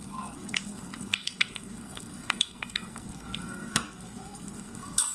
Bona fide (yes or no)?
no